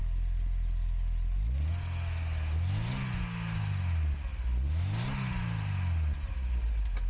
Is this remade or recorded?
recorded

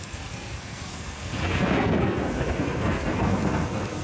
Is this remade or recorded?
remade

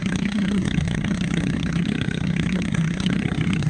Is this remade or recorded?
remade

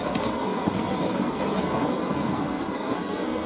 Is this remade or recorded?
remade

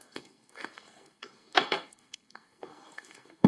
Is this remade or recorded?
remade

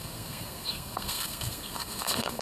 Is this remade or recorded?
remade